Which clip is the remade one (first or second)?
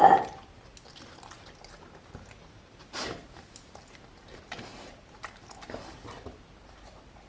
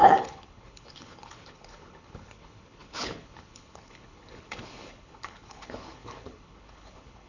second